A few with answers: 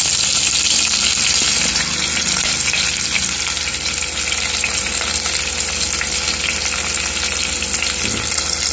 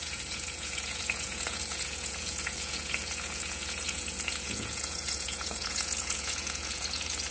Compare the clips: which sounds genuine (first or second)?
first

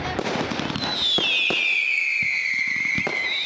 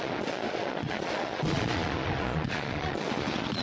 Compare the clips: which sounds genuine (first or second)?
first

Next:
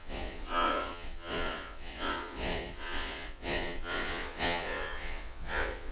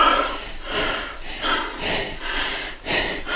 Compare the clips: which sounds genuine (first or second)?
second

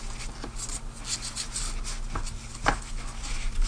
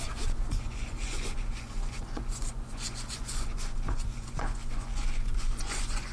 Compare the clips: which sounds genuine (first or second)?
first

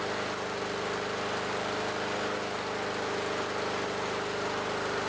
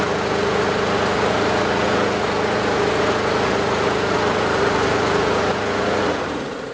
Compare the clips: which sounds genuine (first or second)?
first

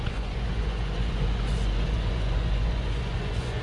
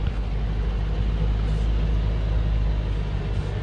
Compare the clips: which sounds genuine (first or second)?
second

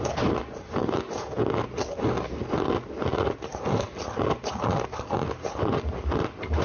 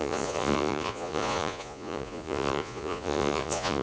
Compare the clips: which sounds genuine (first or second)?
first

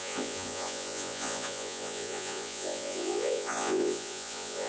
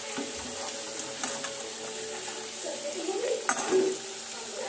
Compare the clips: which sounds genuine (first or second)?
second